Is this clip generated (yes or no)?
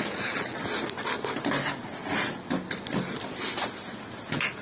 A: no